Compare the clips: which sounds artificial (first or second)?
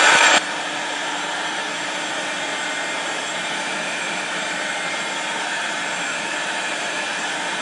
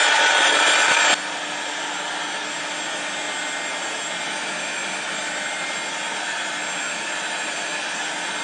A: first